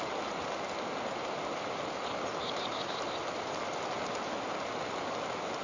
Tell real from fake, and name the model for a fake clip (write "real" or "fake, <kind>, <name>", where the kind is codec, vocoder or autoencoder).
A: real